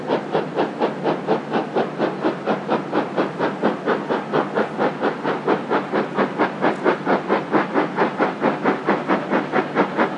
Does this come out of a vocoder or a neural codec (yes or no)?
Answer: no